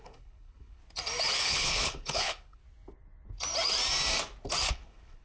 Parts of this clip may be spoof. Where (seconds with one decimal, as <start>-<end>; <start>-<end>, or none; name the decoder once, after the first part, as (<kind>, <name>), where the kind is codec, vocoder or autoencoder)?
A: 0.0-0.8 (codec, HILCodec); 1.4-2.6; 4.7-5.2